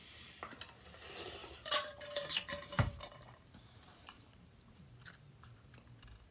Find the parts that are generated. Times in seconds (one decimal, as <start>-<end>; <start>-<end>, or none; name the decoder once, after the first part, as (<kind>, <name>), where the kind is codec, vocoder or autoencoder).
0.0-0.5 (vocoder, BigVGAN v2); 1.4-4.8